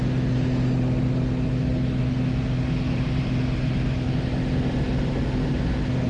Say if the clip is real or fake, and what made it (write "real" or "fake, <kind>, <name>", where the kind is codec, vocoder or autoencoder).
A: real